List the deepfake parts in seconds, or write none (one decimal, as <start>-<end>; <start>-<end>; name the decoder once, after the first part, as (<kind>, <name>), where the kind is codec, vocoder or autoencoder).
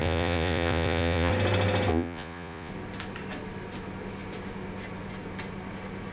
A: 0.0-1.3 (vocoder, Vocos); 1.9-2.7